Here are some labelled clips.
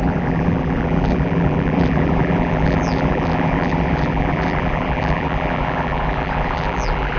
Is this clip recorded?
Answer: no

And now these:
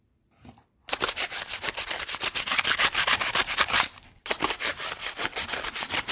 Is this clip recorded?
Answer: no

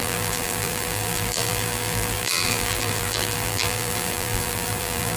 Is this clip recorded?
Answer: no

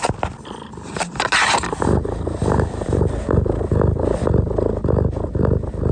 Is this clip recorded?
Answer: yes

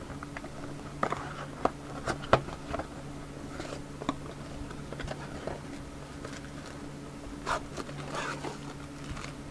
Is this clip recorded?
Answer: yes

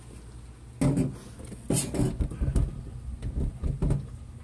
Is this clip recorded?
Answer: yes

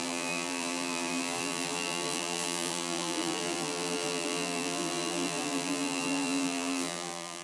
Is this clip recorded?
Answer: no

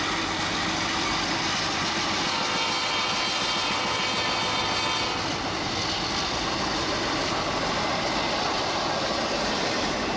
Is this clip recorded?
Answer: yes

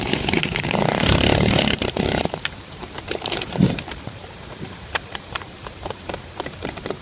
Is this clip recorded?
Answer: no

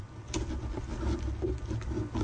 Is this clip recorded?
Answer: yes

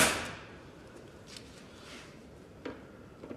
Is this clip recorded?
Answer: yes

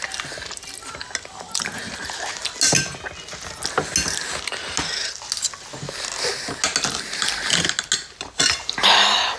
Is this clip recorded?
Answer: yes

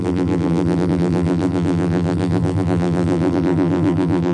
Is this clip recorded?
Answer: no